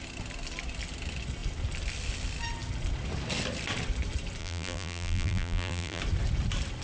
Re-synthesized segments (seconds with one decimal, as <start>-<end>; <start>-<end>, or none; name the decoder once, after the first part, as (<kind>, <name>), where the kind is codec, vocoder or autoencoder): 4.4-6.0 (vocoder, BigVGAN v2)